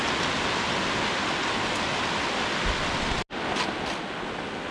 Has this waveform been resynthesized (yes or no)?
no